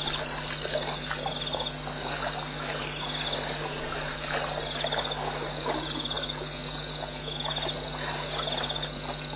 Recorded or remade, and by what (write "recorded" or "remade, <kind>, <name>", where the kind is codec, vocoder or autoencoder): recorded